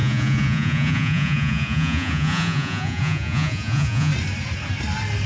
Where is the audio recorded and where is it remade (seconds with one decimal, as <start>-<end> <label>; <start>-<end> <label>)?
0.0-4.1 remade; 4.1-5.3 recorded